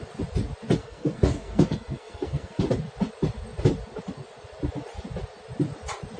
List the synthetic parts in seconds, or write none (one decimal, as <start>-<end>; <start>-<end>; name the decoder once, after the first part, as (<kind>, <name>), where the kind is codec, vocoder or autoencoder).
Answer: 0.8-2.6 (codec, SNAC)